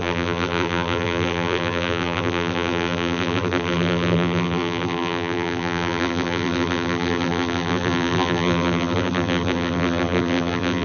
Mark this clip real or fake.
fake